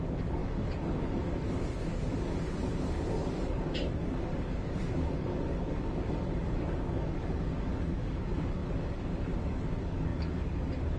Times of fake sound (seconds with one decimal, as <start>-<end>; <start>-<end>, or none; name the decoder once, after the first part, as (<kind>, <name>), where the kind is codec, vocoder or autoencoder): 0.0-11.0 (codec, DAC)

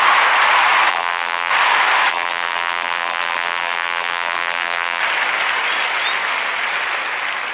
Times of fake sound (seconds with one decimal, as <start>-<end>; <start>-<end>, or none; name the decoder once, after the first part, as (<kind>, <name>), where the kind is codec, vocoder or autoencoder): 0.9-1.5 (vocoder, BigVGAN v2); 2.1-5.0

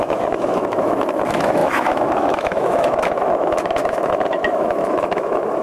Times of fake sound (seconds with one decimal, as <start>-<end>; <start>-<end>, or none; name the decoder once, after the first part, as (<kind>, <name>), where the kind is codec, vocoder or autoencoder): 0.0-5.6 (autoencoder, DAC-VAE)

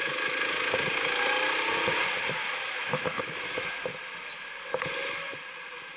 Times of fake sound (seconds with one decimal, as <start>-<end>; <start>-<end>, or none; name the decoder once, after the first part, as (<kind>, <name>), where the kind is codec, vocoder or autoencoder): 0.0-0.8 (autoencoder, DAC-VAE); 2.4-3.5

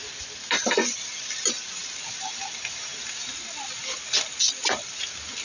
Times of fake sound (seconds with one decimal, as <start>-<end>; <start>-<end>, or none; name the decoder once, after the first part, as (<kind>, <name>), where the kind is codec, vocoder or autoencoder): none